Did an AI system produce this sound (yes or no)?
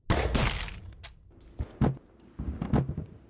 no